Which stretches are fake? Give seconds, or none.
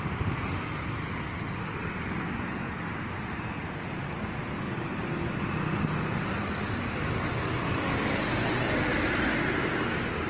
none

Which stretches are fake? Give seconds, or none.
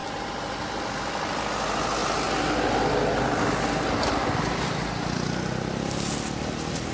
none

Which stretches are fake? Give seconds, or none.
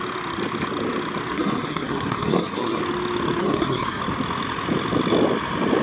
1.3-2.8 (codec, SNAC); 3.4-4.0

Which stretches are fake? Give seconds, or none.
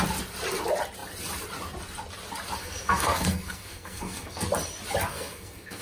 2.6-4.5 (codec, SNAC); 5.1-5.8